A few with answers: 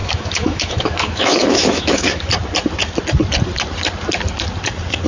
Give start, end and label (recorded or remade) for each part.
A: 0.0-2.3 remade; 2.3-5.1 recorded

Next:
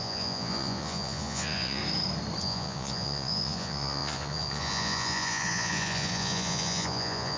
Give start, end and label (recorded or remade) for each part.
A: 0.0-1.8 remade; 1.8-2.4 recorded; 2.4-7.4 remade